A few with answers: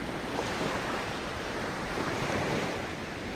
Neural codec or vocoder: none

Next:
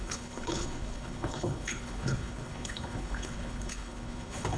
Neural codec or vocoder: codec, HILCodec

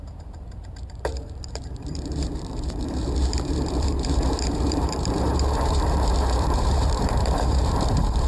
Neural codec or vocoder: vocoder, BigVGAN v2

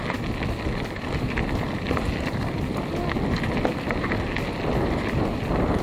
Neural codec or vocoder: none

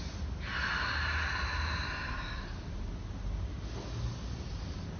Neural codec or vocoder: none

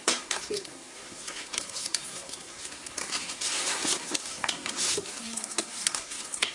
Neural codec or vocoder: codec, SNAC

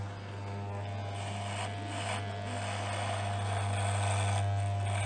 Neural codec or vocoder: none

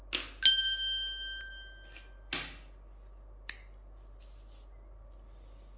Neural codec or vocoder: none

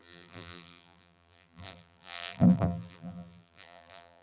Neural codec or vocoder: vocoder, BigVGAN v2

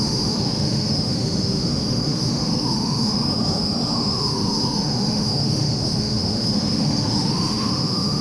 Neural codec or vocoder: autoencoder, DAC-VAE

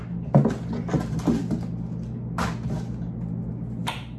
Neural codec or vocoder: none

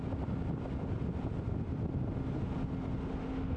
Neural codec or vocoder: none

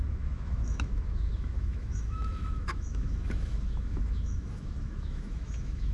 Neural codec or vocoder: autoencoder, DAC-VAE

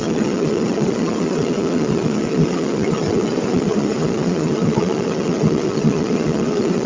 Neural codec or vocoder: vocoder, Vocos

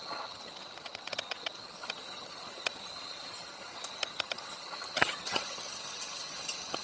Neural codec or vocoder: vocoder, HiFi-GAN